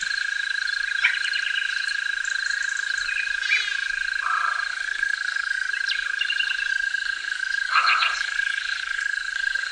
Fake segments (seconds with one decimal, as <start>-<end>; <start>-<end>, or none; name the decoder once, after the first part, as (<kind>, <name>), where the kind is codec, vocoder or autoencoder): 4.7-5.7 (codec, SNAC); 6.7-9.7